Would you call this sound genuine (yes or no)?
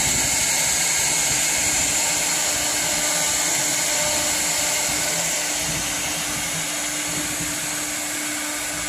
yes